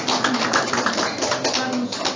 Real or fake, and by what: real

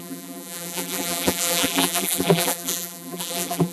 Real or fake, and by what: fake, vocoder, BigVGAN v2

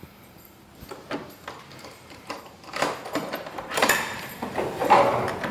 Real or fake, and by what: fake, vocoder, BigVGAN v2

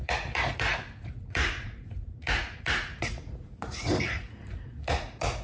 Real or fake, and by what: fake, vocoder, Vocos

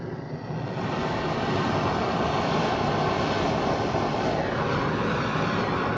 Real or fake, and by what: real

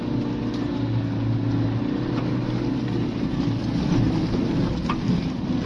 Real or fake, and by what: real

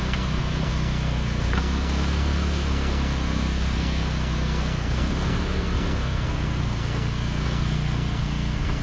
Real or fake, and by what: fake, codec, SNAC